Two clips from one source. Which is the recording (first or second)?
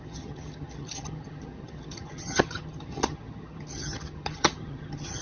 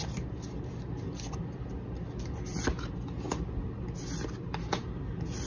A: second